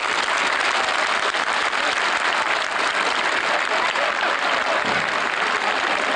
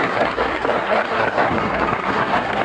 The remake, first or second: second